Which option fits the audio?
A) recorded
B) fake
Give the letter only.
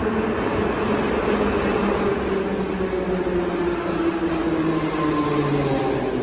A